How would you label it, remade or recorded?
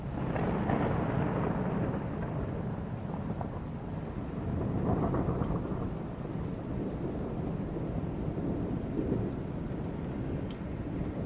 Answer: recorded